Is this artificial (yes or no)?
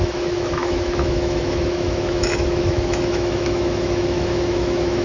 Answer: yes